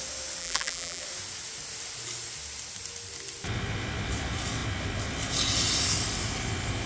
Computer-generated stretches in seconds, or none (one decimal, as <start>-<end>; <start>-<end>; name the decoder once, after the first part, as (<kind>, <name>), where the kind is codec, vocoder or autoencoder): 0.4-1.0 (vocoder, BigVGAN v2)